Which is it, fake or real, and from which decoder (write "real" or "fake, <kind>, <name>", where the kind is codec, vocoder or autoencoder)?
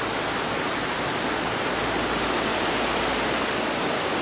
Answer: real